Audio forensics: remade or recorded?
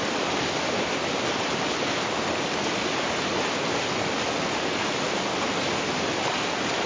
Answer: recorded